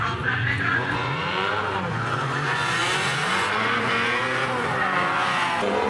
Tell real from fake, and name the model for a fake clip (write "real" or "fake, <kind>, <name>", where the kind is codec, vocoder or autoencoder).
fake, vocoder, Vocos